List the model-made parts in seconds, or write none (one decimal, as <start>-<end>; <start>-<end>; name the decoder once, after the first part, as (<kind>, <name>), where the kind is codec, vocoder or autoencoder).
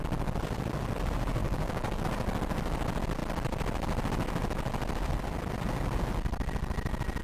1.4-2.0 (codec, DAC)